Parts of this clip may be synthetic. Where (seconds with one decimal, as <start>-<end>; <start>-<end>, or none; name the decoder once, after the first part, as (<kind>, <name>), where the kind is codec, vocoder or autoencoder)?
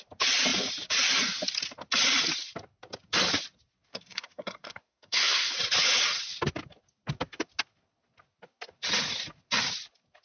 3.9-5.5 (codec, SNAC)